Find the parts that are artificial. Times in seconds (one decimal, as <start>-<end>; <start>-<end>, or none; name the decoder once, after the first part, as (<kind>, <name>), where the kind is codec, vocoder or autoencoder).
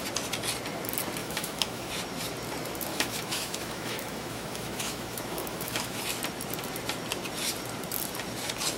1.2-1.9 (autoencoder, DAC-VAE); 2.9-6.0